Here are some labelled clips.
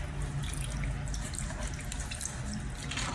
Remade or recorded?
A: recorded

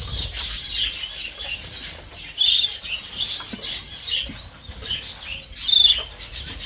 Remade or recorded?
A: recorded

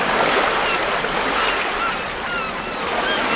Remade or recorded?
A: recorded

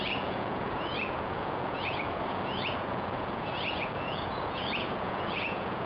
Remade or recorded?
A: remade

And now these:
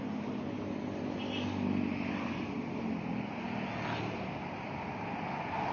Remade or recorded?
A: recorded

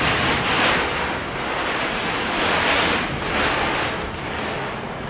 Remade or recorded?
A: recorded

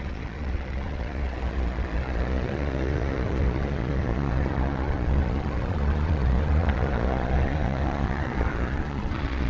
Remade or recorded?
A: remade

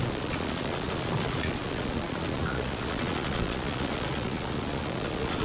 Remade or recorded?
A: remade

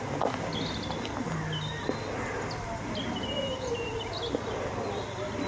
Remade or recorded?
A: recorded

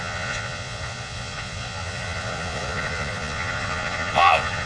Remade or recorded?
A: remade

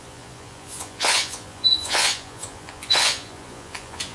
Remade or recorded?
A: remade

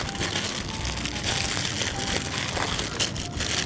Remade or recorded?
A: recorded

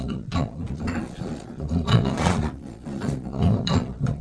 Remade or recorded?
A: remade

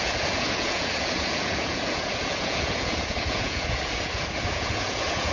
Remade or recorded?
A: remade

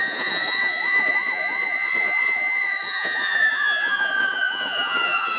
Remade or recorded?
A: remade